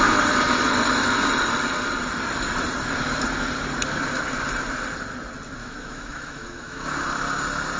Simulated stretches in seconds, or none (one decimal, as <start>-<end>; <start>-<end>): 5.6-7.0